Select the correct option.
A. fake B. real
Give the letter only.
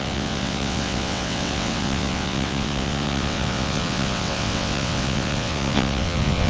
A